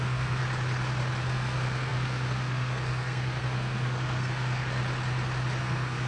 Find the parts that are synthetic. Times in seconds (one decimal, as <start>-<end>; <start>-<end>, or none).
0.0-0.4; 1.2-4.8; 5.6-6.1